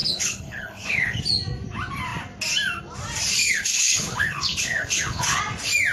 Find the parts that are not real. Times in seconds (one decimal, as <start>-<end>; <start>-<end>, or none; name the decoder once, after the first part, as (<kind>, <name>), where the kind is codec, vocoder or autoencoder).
0.0-1.2 (codec, HILCodec); 3.4-5.4